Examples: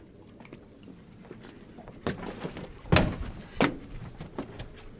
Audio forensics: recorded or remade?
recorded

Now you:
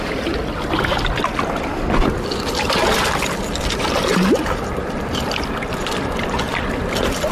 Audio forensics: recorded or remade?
recorded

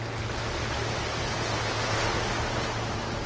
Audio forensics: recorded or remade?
recorded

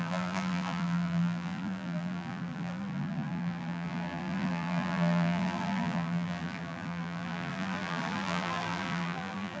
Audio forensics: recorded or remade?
remade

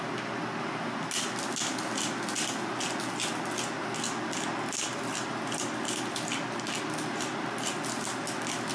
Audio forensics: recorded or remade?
recorded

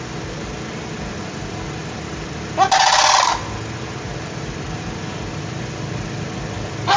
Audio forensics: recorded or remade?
recorded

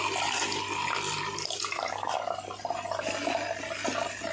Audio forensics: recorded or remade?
recorded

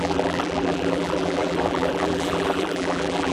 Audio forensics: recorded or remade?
remade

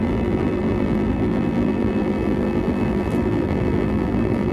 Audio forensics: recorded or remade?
remade